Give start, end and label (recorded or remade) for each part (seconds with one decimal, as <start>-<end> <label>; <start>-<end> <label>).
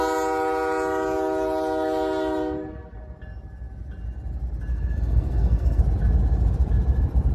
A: 0.0-4.7 recorded; 4.7-5.8 remade; 5.8-7.3 recorded